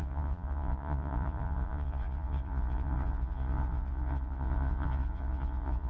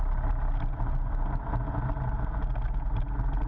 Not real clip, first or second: first